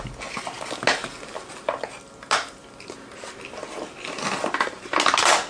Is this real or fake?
real